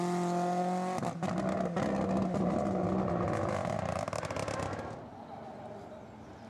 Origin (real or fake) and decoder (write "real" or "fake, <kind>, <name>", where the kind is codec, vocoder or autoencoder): real